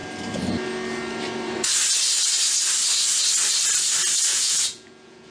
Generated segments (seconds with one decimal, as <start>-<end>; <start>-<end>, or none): 4.3-5.3